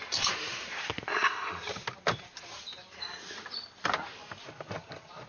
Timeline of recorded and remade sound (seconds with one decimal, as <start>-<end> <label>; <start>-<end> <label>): 0.0-5.3 recorded